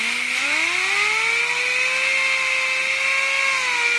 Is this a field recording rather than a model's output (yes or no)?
yes